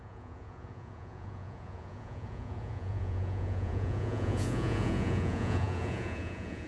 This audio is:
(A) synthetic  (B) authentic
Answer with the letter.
A